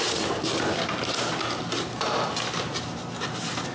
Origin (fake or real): real